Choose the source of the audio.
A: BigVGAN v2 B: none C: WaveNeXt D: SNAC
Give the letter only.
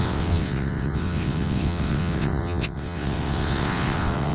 C